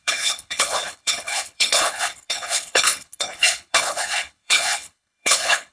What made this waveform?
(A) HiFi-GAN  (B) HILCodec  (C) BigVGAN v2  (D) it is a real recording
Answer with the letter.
B